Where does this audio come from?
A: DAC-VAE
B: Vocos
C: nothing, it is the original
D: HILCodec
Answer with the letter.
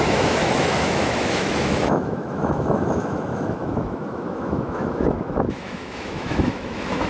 A